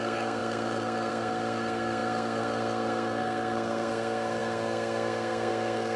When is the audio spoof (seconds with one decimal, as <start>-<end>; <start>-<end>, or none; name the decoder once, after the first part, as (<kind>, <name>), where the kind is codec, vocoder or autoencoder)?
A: 0.0-6.0 (codec, SNAC)